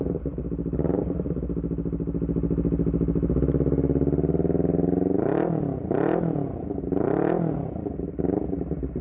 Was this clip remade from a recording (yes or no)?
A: no